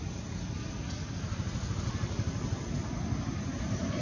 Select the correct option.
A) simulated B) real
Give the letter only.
B